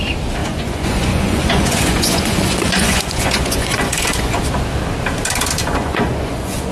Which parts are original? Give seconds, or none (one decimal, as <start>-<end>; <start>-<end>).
0.0-0.4; 4.4-5.6